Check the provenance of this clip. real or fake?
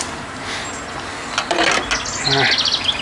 real